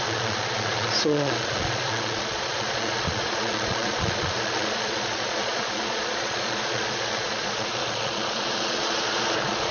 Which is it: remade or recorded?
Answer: remade